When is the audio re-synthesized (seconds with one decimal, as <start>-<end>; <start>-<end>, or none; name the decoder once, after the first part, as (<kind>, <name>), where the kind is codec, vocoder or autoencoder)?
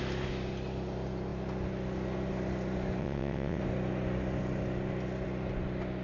3.0-3.6 (vocoder, WaveNeXt)